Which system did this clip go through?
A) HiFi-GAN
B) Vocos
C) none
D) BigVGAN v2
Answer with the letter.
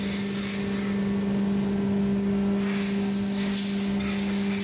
C